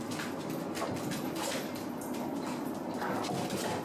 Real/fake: real